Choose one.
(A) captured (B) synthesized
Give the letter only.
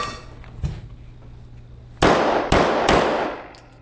A